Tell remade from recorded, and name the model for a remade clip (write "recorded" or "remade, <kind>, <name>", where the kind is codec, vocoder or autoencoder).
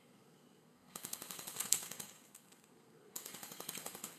remade, codec, SNAC